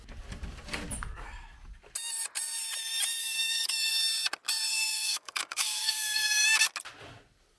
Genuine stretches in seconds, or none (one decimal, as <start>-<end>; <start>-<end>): 0.0-3.2; 3.9-4.7; 6.6-7.6